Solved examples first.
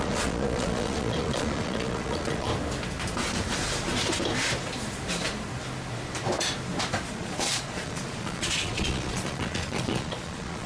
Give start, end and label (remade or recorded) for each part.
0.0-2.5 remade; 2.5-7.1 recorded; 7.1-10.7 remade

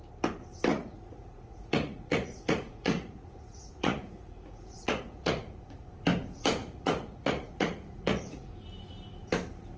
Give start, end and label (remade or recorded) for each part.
0.0-0.7 recorded; 0.7-5.9 remade; 5.9-6.6 recorded; 6.6-8.5 remade; 8.5-9.8 recorded

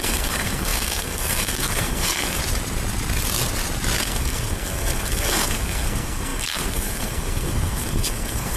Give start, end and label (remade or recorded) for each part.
0.0-2.4 remade; 2.4-4.0 recorded; 4.0-8.6 remade

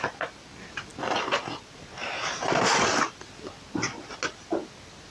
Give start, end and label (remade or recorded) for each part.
0.0-5.1 recorded

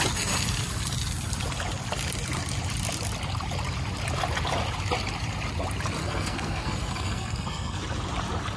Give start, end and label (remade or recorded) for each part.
0.0-6.0 recorded; 6.0-7.8 remade; 7.8-8.6 recorded

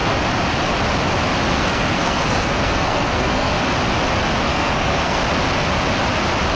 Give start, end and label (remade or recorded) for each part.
0.0-1.5 recorded; 1.5-3.5 remade; 3.5-4.5 recorded; 4.5-5.2 remade; 5.2-6.6 recorded